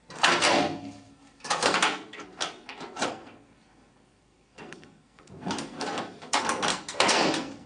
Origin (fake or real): fake